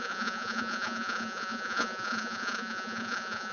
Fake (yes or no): yes